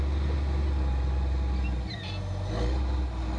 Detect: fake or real real